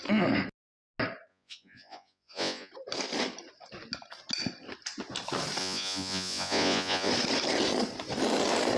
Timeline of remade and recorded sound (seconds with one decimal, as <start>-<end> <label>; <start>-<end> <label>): 0.0-1.3 recorded; 1.3-2.7 remade; 2.7-5.6 recorded; 5.6-7.1 remade; 7.1-8.8 recorded